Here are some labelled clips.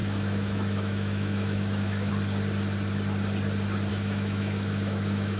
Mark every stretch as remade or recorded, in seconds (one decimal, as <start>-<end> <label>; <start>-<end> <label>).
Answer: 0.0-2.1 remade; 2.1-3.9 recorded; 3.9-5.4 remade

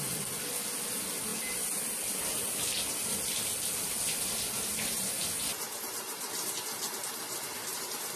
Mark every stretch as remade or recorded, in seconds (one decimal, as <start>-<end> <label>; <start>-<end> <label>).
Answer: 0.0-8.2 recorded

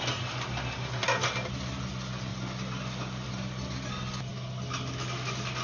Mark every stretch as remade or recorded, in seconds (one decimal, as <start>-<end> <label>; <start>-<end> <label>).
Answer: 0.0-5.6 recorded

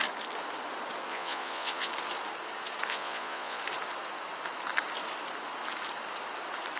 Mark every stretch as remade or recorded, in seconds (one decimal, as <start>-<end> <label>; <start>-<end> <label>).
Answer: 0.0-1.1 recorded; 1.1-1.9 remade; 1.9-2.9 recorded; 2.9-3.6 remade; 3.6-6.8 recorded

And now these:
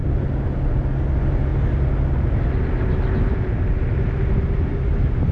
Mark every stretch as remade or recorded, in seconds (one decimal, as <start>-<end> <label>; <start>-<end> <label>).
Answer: 0.0-5.3 recorded

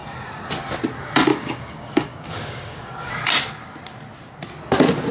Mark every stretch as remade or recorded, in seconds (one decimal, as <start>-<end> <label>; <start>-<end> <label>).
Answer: 0.0-1.3 recorded; 1.3-3.1 remade; 3.1-5.1 recorded

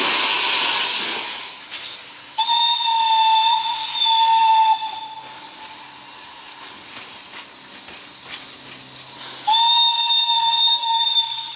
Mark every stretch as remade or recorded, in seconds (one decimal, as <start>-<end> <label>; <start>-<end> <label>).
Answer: 0.0-10.7 recorded; 10.7-11.6 remade

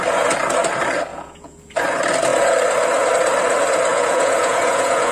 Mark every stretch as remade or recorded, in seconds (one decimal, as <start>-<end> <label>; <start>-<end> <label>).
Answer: 0.0-1.1 recorded; 1.1-1.8 remade; 1.8-3.9 recorded; 3.9-5.1 remade